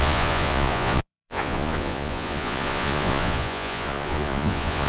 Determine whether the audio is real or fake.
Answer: fake